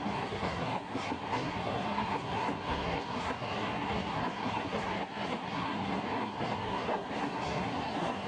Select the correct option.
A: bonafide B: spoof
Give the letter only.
B